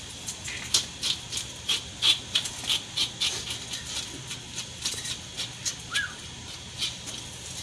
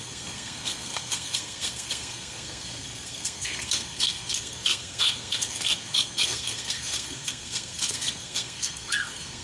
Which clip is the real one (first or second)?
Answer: first